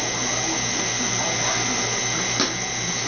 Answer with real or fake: real